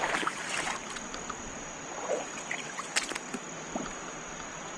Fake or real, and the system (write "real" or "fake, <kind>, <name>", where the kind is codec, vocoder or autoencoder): real